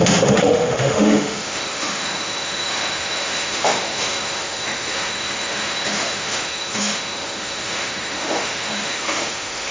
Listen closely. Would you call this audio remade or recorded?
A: remade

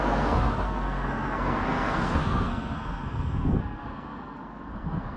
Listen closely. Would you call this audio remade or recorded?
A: remade